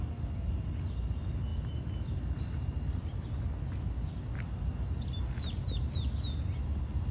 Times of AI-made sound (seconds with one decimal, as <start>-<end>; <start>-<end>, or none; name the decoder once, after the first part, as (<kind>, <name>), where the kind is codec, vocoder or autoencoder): none